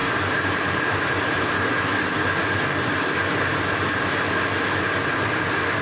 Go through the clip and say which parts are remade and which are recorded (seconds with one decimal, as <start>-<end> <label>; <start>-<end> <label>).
0.0-1.5 remade; 1.5-5.8 recorded